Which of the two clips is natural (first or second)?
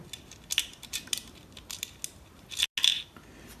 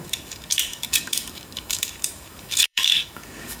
first